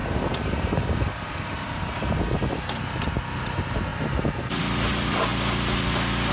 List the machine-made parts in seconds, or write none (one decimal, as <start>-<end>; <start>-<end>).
0.0-2.2; 3.9-4.5; 5.3-6.3